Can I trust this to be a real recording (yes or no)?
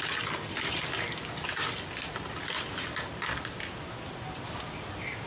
yes